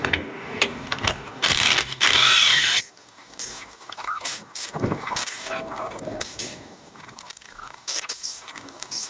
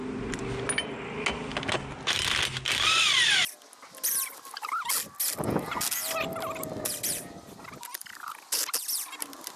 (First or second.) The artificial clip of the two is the first